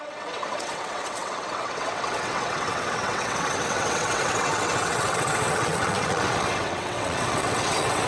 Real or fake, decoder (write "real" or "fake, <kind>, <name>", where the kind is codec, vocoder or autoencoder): fake, vocoder, WaveNeXt